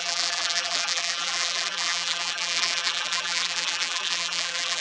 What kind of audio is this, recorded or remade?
remade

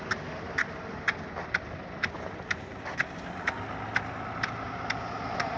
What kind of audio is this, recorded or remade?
recorded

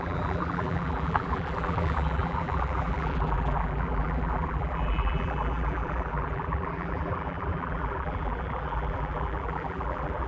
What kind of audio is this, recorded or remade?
remade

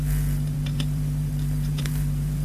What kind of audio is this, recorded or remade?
remade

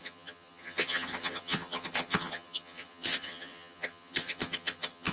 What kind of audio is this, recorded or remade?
remade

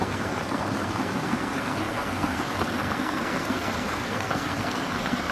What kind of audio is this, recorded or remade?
remade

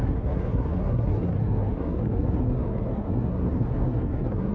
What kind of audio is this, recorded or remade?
remade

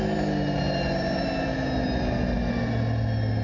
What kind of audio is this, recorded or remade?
recorded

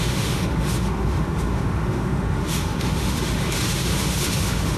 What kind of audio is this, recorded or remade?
remade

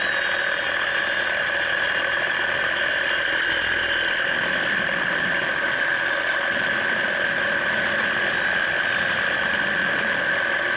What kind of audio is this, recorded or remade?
recorded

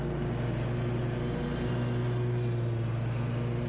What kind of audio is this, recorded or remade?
recorded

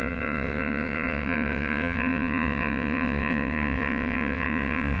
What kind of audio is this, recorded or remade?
remade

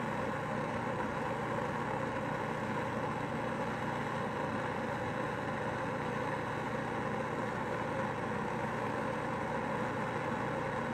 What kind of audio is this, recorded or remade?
recorded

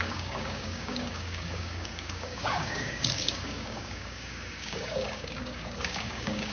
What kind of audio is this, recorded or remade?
remade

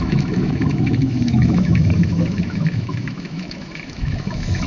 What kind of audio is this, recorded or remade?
remade